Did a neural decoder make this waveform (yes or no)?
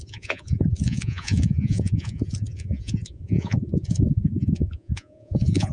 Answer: yes